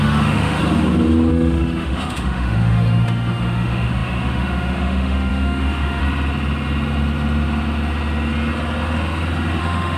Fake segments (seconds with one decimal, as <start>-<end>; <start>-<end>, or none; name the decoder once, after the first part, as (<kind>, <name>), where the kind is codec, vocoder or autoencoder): 0.0-0.6 (autoencoder, DAC-VAE); 1.3-6.0; 9.6-10.0